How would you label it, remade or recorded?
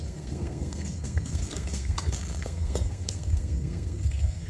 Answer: remade